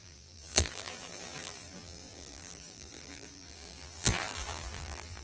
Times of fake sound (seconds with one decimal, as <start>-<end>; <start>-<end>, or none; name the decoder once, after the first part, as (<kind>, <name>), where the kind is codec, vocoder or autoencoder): 0.0-5.2 (vocoder, BigVGAN v2)